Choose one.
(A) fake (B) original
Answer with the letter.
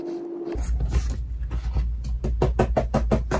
B